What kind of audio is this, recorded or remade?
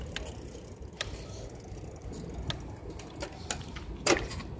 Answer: recorded